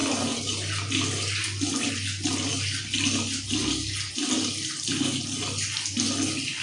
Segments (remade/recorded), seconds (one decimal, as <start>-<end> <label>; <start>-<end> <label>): 0.0-6.6 recorded